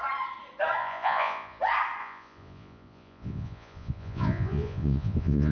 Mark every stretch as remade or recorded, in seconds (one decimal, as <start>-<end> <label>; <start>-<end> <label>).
0.0-0.8 recorded; 0.8-1.6 remade; 1.6-2.0 recorded; 2.0-5.5 remade